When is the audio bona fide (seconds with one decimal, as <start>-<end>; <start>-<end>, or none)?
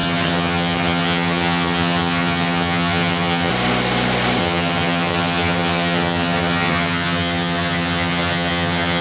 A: 3.5-4.4